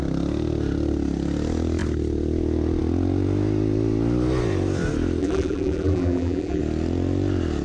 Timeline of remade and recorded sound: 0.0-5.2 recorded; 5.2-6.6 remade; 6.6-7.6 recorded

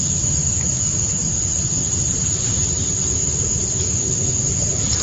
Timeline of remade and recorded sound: 0.0-0.4 recorded; 0.4-2.9 remade; 2.9-5.0 recorded

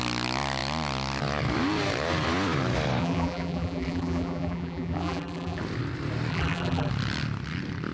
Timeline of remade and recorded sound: 0.0-3.0 recorded; 3.0-5.6 remade; 5.6-6.3 recorded; 6.3-6.9 remade; 6.9-7.9 recorded

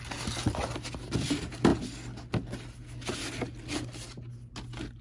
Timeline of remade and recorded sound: 0.0-5.0 recorded

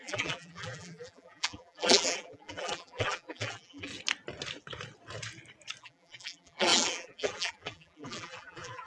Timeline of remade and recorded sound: 0.0-3.9 remade; 3.9-5.8 recorded; 5.8-8.9 remade

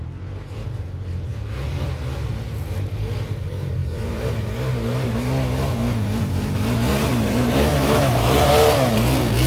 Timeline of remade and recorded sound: 0.0-3.8 recorded; 3.8-4.3 remade; 4.3-6.9 recorded; 6.9-8.5 remade; 8.5-9.5 recorded

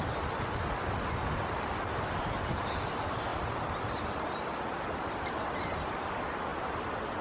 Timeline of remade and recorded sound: 0.0-6.5 recorded; 6.5-7.2 remade